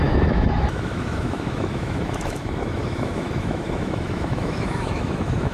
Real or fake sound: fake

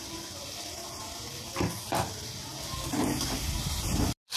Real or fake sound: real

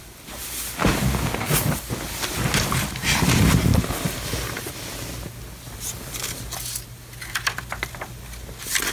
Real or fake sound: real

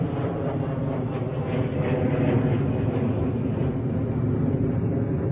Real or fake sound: real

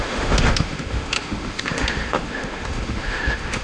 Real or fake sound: fake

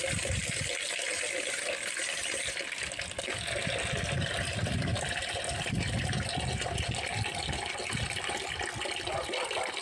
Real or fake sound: real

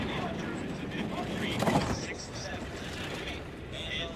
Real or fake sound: real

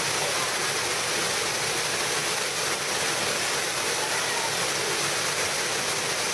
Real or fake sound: real